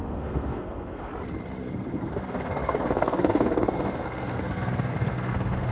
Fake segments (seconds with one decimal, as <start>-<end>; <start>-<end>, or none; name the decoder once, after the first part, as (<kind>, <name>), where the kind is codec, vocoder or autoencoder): 0.0-1.1 (codec, SNAC); 1.6-5.7